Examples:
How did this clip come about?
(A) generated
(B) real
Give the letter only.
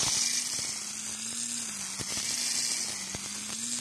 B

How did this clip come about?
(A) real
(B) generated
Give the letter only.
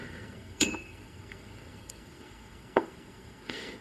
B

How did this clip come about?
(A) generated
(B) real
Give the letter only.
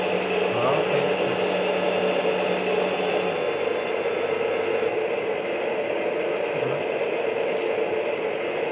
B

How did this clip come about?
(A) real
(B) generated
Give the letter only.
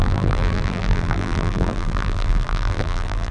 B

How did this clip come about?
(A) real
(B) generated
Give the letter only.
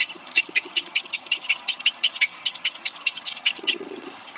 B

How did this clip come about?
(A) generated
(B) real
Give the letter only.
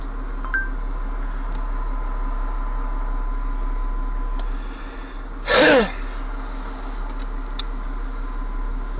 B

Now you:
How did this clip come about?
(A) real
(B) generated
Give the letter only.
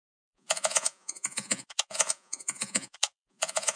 B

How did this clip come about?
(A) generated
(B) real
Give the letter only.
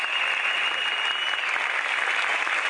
B